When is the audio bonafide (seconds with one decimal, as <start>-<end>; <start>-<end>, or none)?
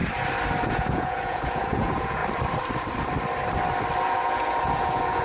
0.0-0.7; 2.2-4.0